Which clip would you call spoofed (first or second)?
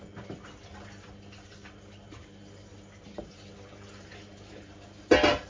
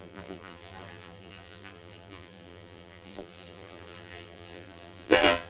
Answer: second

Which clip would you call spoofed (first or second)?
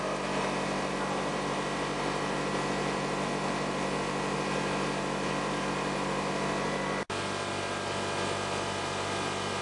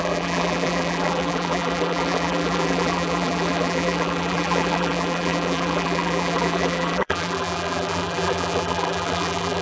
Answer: second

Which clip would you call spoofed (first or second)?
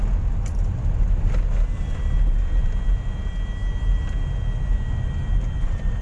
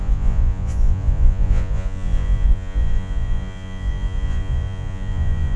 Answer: second